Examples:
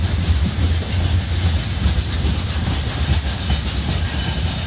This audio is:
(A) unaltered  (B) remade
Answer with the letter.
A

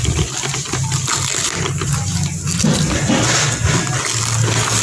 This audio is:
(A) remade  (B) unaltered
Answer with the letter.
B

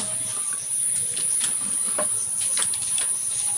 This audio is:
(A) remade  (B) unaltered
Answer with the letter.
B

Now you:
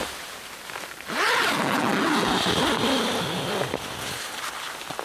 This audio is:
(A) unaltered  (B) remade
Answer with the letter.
A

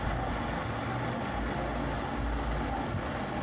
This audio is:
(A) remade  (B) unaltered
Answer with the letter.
B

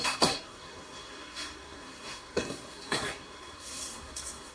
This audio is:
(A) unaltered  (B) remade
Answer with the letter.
B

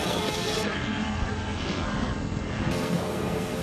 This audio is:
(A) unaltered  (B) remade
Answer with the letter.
B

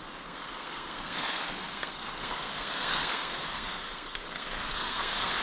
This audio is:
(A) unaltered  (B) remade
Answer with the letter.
B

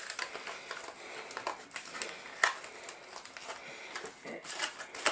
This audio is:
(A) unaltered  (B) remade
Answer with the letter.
A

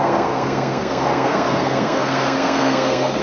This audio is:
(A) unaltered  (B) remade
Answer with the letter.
B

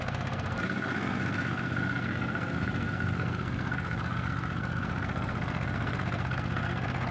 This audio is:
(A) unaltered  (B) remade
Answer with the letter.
B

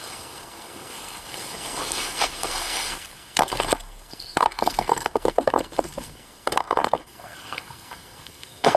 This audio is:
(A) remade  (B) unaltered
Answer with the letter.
A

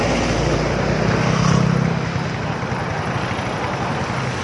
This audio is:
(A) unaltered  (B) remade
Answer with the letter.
A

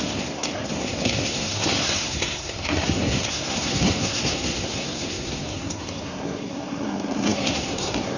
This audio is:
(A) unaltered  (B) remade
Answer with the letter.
B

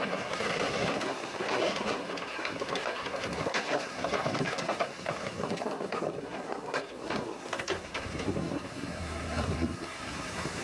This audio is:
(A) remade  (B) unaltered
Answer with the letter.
A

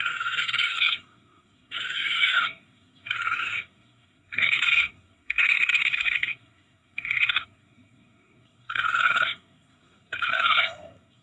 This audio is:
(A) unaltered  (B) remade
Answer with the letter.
B